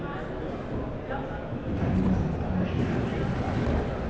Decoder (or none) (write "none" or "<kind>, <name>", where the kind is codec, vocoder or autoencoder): none